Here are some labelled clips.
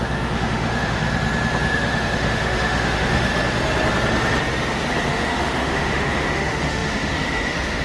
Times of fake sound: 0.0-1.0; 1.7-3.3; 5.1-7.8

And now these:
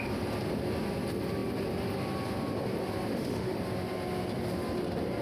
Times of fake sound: 3.1-3.6

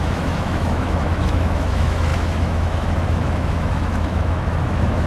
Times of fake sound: 0.0-5.1